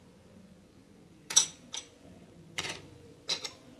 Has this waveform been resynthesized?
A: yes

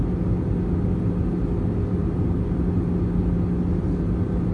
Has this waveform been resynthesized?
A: no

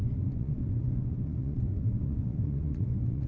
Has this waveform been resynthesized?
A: yes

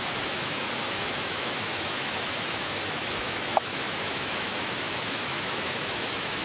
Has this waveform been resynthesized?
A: yes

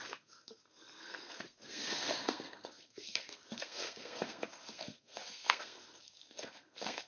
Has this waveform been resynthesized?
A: yes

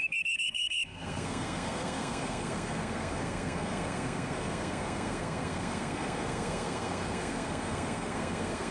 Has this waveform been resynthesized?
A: yes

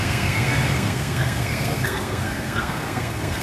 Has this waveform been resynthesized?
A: yes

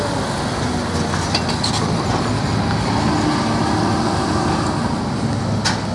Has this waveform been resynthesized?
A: no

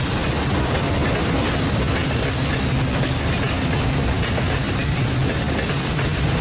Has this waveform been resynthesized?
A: no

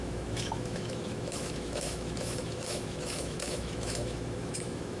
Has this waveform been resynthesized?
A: yes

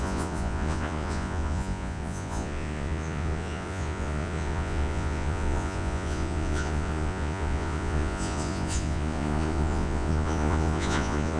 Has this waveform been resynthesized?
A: yes